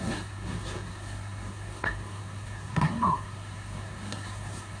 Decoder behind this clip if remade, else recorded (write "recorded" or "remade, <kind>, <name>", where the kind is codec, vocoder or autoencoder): remade, codec, SNAC